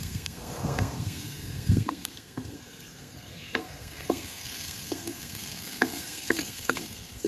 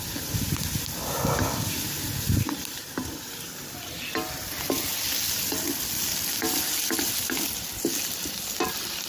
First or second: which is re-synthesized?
first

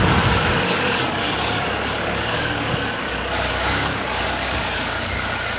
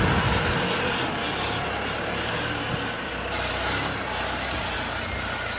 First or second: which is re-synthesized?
first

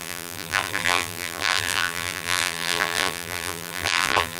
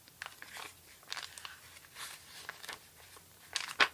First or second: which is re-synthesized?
first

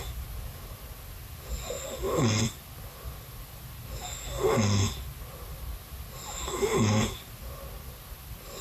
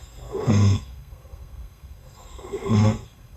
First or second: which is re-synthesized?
second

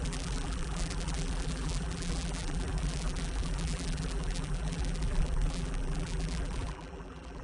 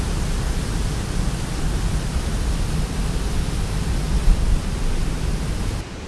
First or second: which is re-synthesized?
first